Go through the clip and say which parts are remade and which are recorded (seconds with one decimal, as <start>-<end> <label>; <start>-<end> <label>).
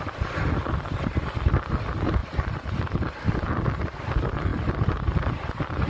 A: 0.0-2.2 recorded; 2.2-3.6 remade; 3.6-4.5 recorded; 4.5-5.2 remade; 5.2-5.9 recorded